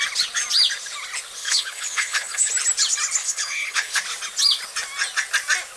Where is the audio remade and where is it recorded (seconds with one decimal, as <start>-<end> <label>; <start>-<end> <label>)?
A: 0.0-1.4 recorded; 1.4-2.5 remade; 2.5-3.2 recorded; 3.2-4.0 remade; 4.0-5.8 recorded